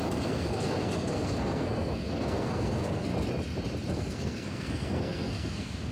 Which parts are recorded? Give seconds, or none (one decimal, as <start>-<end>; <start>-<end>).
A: 3.1-3.9